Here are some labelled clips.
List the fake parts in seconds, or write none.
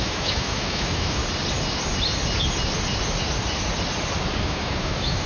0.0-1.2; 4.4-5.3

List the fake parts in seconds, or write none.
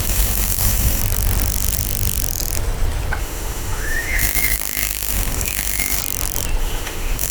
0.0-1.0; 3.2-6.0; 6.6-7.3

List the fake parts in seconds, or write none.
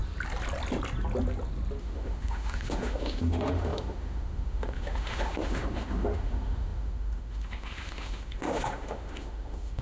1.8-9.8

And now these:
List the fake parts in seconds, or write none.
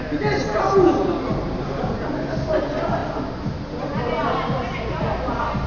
none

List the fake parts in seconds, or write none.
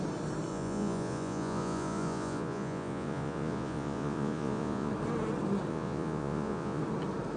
0.5-4.9; 5.7-6.8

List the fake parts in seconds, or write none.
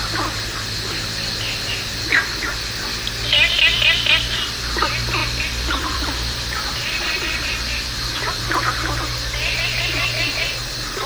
5.2-8.4